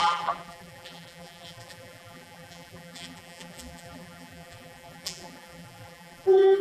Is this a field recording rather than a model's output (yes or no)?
no